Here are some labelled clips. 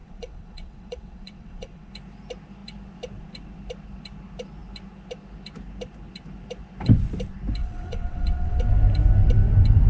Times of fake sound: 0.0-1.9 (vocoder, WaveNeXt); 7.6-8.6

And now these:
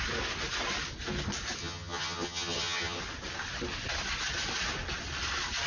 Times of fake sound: 1.6-3.0 (vocoder, HiFi-GAN)

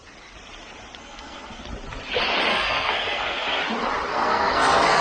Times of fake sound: 1.0-1.6 (codec, SNAC); 2.5-3.6; 4.1-5.0